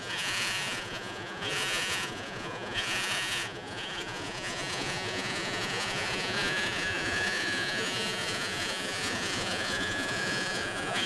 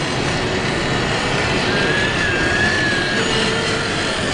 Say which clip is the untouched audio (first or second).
second